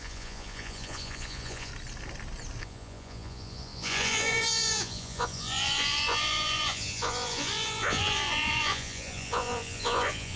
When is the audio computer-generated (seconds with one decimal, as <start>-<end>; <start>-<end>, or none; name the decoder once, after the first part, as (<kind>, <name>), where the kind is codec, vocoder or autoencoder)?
0.0-1.7 (vocoder, Vocos); 2.6-10.4